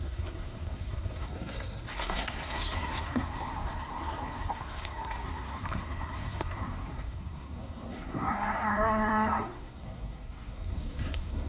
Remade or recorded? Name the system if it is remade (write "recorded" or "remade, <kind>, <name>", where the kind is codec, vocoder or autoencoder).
remade, codec, SNAC